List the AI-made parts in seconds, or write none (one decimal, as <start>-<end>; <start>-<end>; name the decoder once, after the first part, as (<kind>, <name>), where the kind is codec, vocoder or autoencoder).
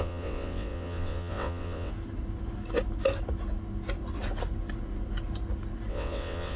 0.0-1.9 (vocoder, WaveNeXt); 5.9-6.6